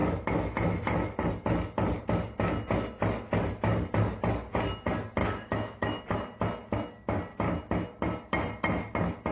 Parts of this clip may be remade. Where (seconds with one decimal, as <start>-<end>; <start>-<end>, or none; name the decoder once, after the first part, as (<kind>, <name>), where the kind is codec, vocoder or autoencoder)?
5.2-6.0 (autoencoder, DAC-VAE)

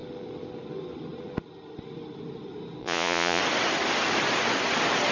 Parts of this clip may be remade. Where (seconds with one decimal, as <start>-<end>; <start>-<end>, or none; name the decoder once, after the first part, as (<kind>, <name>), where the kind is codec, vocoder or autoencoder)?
2.8-3.4 (vocoder, Vocos)

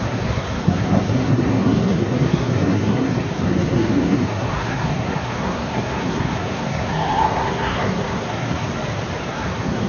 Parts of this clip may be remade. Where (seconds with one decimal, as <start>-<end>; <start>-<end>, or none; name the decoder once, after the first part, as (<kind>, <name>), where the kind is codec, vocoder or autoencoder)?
0.0-8.7 (codec, SNAC); 9.3-9.9

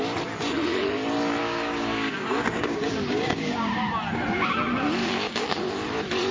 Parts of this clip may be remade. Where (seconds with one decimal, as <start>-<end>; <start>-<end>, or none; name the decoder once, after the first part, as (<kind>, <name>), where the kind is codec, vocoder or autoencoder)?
1.4-3.8 (codec, DAC); 5.0-5.6